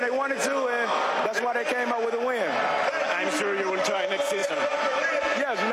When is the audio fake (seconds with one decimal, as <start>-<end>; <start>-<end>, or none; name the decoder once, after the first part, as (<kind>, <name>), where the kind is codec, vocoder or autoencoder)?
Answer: 4.4-5.2 (vocoder, BigVGAN v2)